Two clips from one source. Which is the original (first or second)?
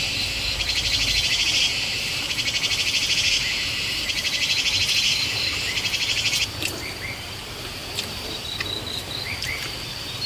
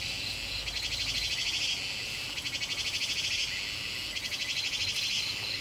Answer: second